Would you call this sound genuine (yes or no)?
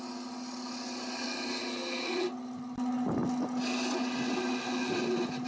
yes